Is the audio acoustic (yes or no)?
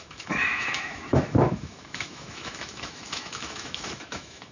no